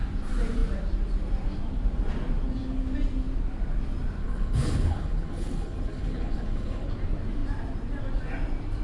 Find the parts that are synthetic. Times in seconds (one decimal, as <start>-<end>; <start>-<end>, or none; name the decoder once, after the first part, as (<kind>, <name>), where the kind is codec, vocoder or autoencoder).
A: 4.2-6.9 (codec, HILCodec)